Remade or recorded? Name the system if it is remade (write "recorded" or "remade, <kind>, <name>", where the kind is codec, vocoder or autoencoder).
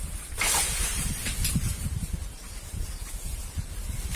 remade, vocoder, BigVGAN v2